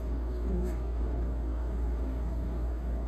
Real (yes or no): no